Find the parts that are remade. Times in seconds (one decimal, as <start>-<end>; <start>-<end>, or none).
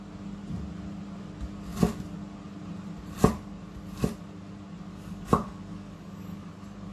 4.9-6.5